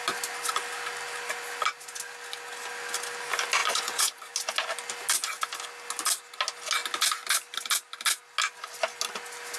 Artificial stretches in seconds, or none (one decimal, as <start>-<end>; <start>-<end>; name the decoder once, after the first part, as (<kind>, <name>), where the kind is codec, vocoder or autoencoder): 3.6-4.3 (vocoder, Vocos)